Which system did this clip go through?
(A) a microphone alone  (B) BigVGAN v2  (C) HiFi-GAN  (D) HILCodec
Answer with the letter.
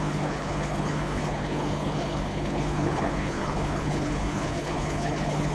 D